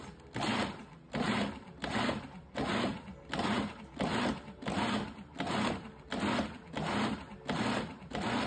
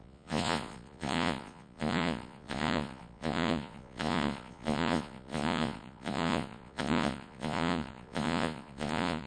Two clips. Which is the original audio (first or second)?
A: first